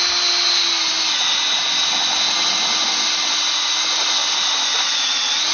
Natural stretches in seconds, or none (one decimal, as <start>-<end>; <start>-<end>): 0.0-5.5